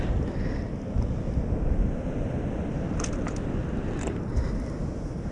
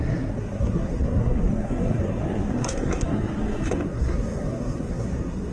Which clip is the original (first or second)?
first